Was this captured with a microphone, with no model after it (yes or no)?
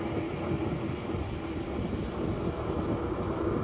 yes